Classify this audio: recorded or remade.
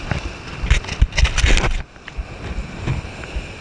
recorded